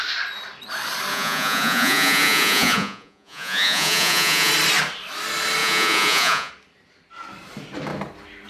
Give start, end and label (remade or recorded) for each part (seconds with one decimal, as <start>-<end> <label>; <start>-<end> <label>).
0.0-1.1 recorded; 1.1-4.5 remade; 4.5-5.6 recorded; 5.6-6.5 remade; 6.5-8.5 recorded